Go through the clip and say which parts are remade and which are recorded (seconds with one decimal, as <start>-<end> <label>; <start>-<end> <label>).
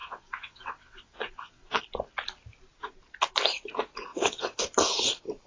0.0-1.8 remade; 1.8-4.1 recorded; 4.1-4.6 remade; 4.6-5.5 recorded